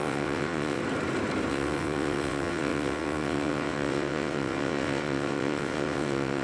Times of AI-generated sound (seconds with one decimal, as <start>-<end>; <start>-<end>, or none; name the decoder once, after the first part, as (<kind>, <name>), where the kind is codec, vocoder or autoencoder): 0.0-0.8 (vocoder, WaveNeXt); 1.5-6.4